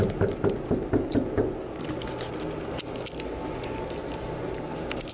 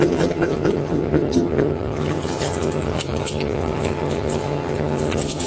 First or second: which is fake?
second